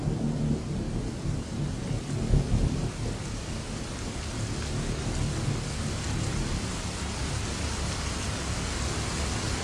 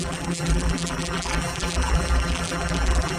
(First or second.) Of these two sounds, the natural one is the first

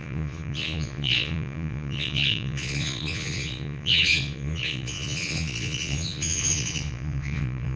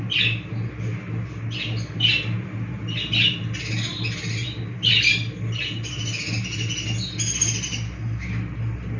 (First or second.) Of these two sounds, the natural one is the second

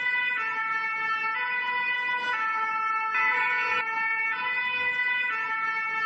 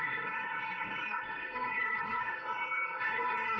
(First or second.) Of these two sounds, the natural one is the first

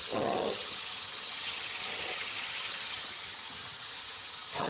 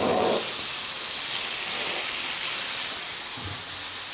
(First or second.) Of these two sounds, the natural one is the second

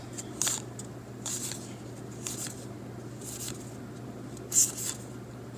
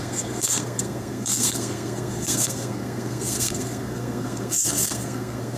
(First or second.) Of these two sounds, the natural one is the first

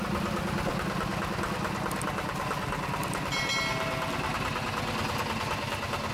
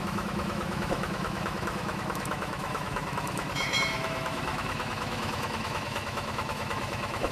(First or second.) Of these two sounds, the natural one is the first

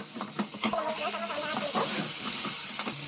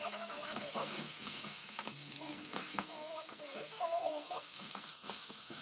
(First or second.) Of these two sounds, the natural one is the first